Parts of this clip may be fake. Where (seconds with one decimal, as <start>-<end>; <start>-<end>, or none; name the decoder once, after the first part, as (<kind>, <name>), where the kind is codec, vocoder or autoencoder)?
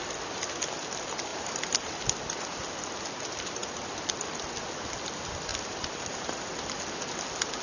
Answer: 1.3-1.9 (vocoder, BigVGAN v2); 5.5-6.3